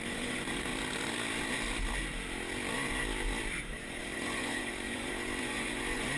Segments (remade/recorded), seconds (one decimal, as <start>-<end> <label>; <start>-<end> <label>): 0.0-0.7 remade; 0.7-3.6 recorded; 3.6-6.2 remade